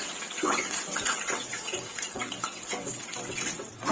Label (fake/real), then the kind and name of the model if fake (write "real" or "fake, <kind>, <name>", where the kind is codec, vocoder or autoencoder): fake, vocoder, WaveNeXt